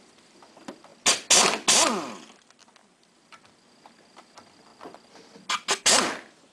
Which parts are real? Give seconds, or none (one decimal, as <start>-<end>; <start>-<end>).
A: 0.9-4.1; 4.7-5.8